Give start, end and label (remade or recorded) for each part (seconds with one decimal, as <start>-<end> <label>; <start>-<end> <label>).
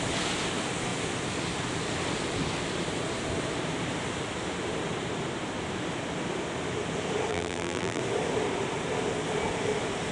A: 0.0-7.3 recorded; 7.3-8.0 remade; 8.0-10.1 recorded